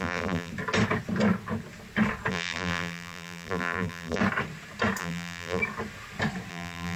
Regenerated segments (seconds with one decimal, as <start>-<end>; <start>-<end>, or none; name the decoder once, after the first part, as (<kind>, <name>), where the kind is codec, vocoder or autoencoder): 0.0-0.5 (vocoder, BigVGAN v2); 2.3-4.2; 5.0-5.6; 6.5-7.0